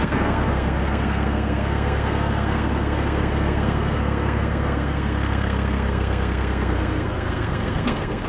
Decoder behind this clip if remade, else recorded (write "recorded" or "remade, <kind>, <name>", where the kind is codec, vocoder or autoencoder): remade, codec, SNAC